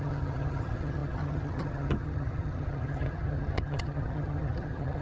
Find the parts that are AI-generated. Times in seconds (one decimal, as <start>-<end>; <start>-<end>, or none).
0.0-5.0